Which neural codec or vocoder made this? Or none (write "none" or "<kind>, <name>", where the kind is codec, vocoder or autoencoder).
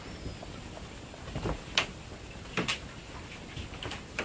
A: none